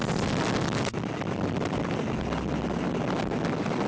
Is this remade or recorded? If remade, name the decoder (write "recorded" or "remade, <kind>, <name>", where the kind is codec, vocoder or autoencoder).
recorded